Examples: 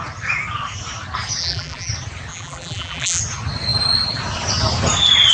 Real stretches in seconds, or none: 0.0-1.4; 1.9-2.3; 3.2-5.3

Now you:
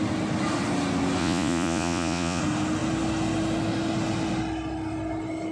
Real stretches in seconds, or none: 0.0-1.2; 2.4-5.5

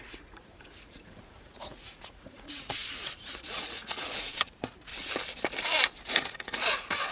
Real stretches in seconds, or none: 2.8-3.5; 4.9-6.1

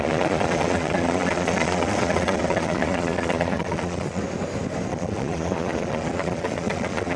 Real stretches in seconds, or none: 4.2-4.9

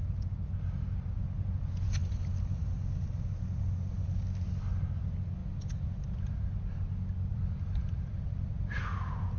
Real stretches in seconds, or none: 0.0-7.3; 8.8-9.4

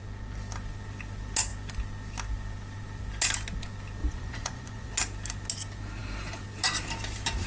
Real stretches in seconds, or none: 0.0-4.0; 4.9-7.5